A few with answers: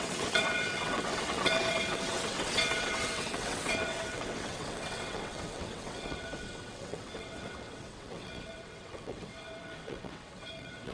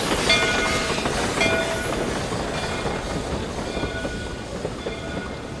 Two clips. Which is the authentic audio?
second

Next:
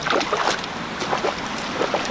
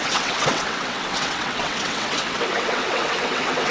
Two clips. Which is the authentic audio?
first